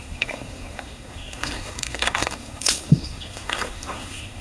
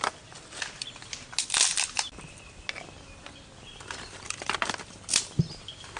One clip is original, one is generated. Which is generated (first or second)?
first